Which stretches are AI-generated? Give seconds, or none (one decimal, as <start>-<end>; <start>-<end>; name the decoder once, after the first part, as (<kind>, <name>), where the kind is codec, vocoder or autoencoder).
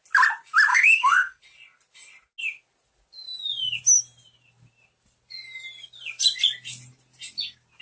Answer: 0.7-1.4 (codec, SNAC)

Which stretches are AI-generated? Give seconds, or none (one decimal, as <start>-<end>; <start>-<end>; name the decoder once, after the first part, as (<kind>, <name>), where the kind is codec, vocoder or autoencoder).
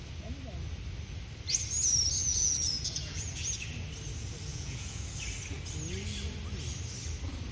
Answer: 2.2-3.5 (vocoder, Vocos); 4.5-5.1